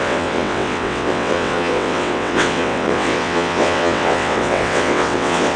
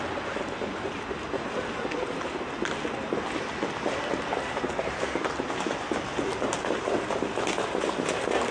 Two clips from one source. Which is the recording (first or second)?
second